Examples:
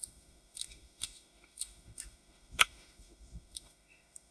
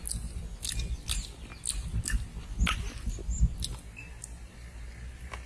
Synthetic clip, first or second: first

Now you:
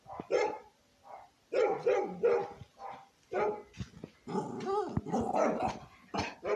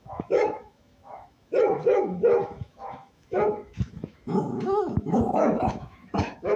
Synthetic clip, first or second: second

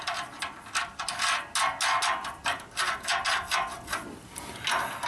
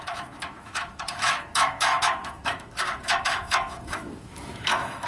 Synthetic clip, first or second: second